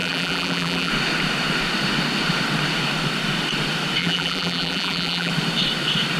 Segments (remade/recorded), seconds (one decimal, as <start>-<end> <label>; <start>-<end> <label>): 0.0-0.9 remade; 0.9-4.0 recorded; 4.0-5.3 remade; 5.3-6.2 recorded